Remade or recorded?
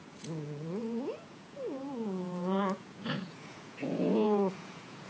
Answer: remade